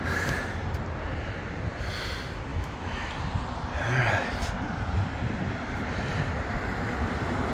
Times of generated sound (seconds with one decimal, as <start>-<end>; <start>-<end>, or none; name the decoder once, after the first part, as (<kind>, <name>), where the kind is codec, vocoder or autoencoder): 2.5-3.1 (autoencoder, DAC-VAE)

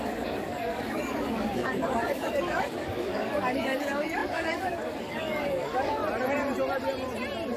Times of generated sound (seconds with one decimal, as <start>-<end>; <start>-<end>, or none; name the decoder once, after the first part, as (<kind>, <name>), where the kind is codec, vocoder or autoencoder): 0.0-6.0 (codec, DAC)

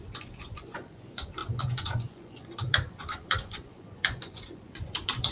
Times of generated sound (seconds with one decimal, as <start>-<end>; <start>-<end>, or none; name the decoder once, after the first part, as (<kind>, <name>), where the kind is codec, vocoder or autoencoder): 0.0-5.3 (vocoder, Vocos)

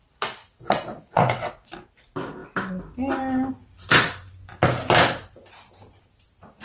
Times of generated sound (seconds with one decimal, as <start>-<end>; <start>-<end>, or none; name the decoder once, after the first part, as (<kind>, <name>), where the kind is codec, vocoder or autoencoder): 0.4-1.5 (vocoder, WaveNeXt)